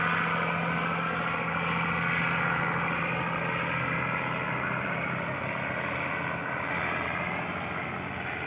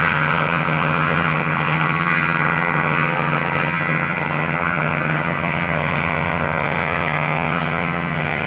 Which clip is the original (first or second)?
first